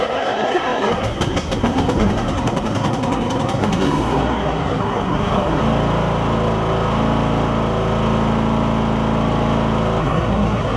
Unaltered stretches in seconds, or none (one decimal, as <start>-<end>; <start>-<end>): 5.6-10.0